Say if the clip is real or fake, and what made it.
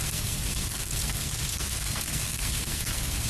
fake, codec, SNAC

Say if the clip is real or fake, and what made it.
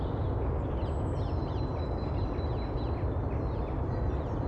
real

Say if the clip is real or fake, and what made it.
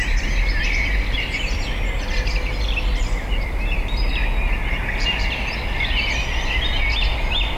real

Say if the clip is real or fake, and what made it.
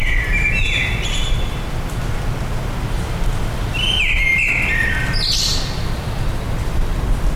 real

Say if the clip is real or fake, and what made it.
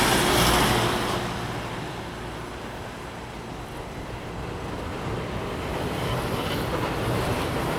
real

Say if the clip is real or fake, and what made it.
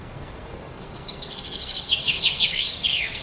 fake, codec, SNAC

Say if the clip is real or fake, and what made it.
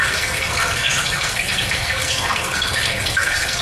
fake, codec, SNAC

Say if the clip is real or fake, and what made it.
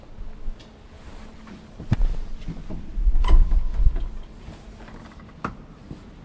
real